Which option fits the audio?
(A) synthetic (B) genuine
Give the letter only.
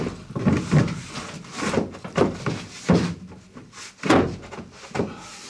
B